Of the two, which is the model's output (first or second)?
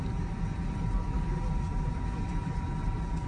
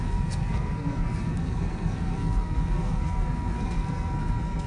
second